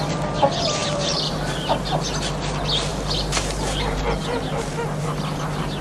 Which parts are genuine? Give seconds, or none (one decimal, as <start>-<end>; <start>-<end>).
0.0-0.8; 2.0-2.9; 4.0-5.8